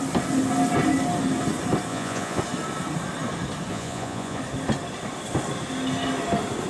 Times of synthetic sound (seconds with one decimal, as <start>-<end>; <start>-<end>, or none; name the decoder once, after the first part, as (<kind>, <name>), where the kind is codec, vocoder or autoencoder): 1.9-2.4 (vocoder, Vocos); 3.7-4.4